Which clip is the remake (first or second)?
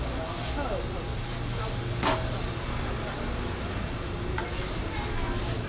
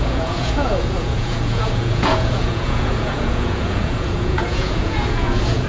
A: second